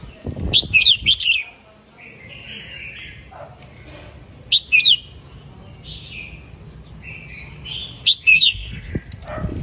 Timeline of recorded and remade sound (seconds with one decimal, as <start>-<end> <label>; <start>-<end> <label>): 0.0-8.3 recorded; 8.3-8.9 remade; 8.9-9.6 recorded

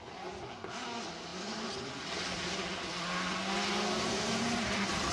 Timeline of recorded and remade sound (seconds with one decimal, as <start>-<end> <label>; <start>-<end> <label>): 0.0-5.1 recorded

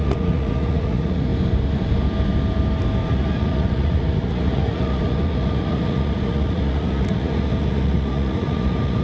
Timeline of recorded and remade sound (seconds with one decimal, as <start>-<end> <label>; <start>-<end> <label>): 0.0-1.3 remade; 1.3-3.1 recorded; 3.1-9.0 remade